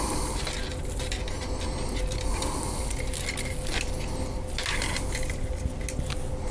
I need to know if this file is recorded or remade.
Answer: recorded